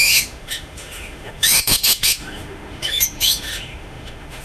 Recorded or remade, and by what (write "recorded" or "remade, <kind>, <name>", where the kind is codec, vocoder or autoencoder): remade, autoencoder, DAC-VAE